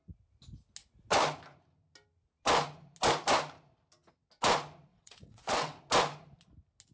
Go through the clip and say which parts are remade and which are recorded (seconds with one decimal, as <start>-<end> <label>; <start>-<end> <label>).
0.0-4.9 recorded; 4.9-5.8 remade; 5.8-6.9 recorded